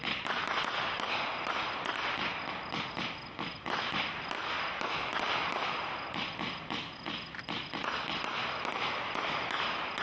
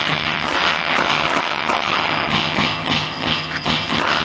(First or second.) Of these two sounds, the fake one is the second